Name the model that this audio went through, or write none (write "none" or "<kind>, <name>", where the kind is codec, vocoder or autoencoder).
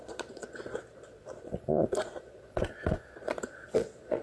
vocoder, Vocos